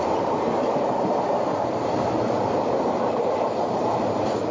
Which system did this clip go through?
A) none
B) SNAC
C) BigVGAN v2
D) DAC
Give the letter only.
C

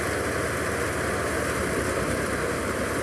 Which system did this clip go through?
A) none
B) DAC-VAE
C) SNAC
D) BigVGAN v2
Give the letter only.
A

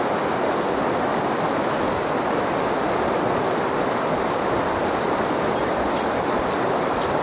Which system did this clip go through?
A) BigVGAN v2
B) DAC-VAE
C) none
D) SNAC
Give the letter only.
C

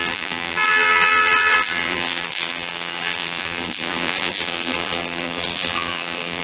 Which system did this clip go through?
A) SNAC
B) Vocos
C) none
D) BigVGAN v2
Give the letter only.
D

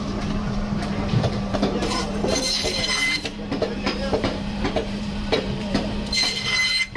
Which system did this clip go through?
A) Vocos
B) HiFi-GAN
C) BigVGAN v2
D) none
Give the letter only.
C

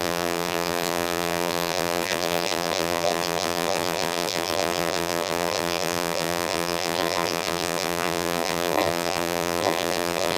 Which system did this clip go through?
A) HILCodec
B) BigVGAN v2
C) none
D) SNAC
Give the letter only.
B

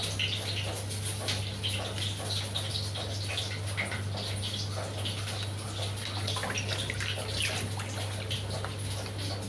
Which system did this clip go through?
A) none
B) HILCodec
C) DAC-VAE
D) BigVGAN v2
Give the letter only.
A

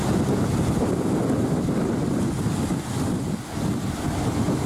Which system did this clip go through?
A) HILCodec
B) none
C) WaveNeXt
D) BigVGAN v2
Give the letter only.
B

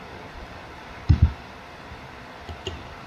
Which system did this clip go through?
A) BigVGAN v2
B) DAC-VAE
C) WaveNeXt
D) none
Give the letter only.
A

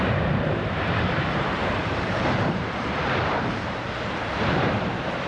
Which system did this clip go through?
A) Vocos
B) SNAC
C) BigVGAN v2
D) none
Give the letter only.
C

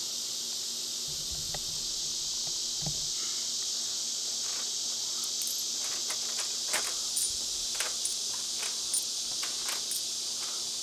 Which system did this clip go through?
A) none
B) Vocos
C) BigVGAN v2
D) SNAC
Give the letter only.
A